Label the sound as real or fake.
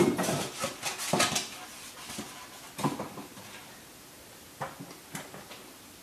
real